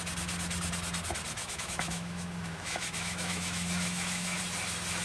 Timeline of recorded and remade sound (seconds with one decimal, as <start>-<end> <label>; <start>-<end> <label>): 0.0-1.4 recorded; 1.4-4.4 remade; 4.4-5.0 recorded